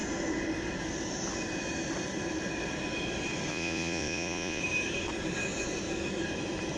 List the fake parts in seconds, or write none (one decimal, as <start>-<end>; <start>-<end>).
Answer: 3.5-4.6